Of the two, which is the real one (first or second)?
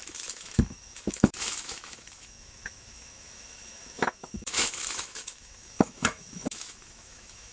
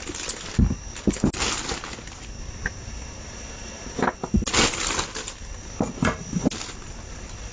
second